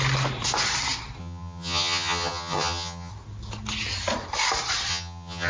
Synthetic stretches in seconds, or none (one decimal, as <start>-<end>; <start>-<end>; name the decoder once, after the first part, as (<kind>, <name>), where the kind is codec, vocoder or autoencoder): 1.2-3.1 (vocoder, HiFi-GAN); 4.9-5.5